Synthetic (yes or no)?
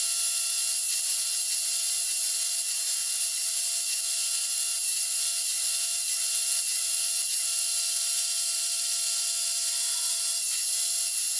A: no